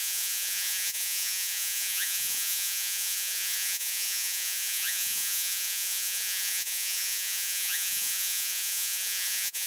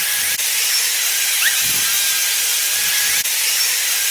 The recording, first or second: second